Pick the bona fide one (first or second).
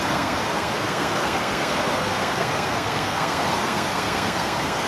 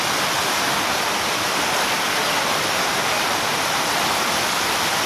second